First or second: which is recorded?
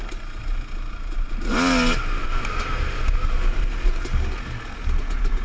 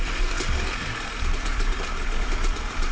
first